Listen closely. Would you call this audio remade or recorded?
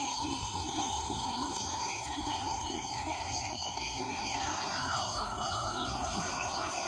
remade